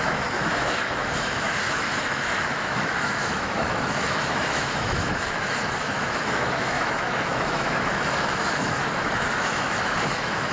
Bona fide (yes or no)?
no